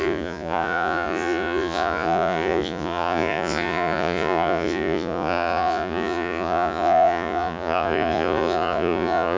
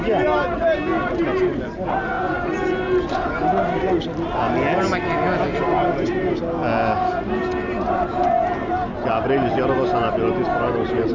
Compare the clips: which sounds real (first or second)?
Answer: second